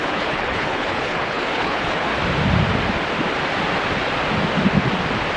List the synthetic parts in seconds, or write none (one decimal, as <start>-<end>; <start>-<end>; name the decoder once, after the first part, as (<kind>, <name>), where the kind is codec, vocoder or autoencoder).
0.0-2.1 (codec, HILCodec)